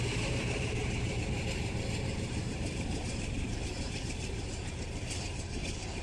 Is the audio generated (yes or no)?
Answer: yes